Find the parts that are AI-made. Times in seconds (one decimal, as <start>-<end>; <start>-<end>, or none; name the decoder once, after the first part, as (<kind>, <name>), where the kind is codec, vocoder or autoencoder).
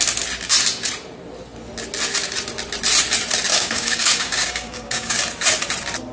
3.5-5.2 (codec, DAC)